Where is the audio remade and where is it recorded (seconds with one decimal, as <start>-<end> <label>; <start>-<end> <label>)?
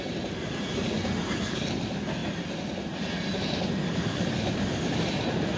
0.0-5.6 recorded